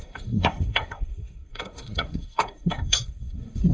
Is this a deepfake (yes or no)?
yes